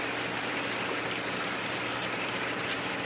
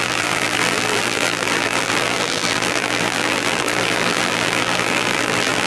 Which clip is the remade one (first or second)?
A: second